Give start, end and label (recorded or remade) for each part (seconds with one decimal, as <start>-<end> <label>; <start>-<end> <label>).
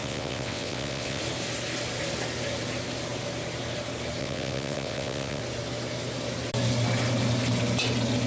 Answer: 0.0-1.2 remade; 1.2-4.2 recorded; 4.2-5.4 remade; 5.4-8.3 recorded